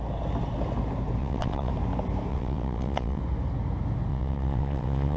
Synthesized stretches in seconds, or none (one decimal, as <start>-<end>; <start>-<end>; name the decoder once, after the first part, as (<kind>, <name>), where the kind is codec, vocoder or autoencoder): 1.2-1.7 (vocoder, WaveNeXt); 2.3-3.2; 4.1-5.2